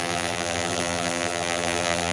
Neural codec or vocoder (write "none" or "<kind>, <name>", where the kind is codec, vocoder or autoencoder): vocoder, BigVGAN v2